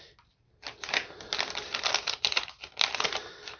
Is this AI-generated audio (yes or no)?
no